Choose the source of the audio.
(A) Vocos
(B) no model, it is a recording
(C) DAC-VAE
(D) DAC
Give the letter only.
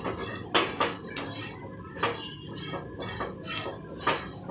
B